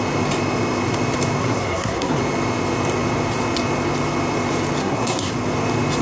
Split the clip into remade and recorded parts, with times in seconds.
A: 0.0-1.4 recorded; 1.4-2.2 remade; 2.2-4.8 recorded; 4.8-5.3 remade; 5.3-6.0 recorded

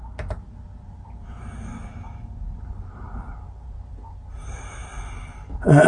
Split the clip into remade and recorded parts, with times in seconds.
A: 0.0-5.9 recorded

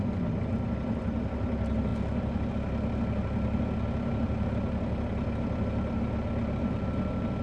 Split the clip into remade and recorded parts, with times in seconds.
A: 0.0-7.4 recorded

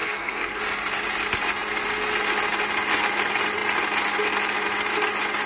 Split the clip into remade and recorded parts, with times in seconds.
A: 0.0-0.6 remade; 0.6-5.5 recorded

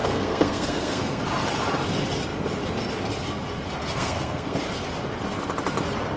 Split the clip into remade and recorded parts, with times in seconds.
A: 0.0-1.2 remade; 1.2-3.8 recorded; 3.8-4.6 remade; 4.6-6.2 recorded

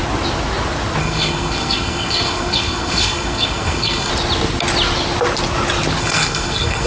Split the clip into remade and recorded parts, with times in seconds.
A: 0.0-1.0 recorded; 1.0-4.1 remade; 4.1-6.0 recorded; 6.0-6.9 remade

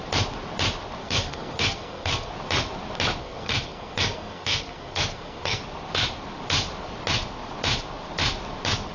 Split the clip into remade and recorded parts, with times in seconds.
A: 0.0-1.0 recorded; 1.0-2.3 remade; 2.3-3.2 recorded; 3.2-5.6 remade; 5.6-8.9 recorded

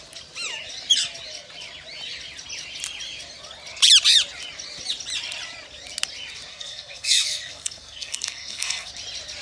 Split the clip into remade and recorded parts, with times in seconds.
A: 0.0-6.5 recorded; 6.5-8.9 remade; 8.9-9.4 recorded